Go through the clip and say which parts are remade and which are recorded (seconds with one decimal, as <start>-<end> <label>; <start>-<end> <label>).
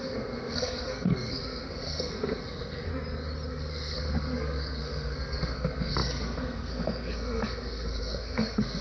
0.0-2.9 remade; 2.9-3.5 recorded; 3.5-8.8 remade